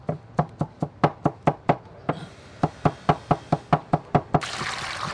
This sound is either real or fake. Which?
real